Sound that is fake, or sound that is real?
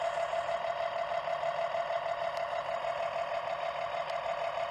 real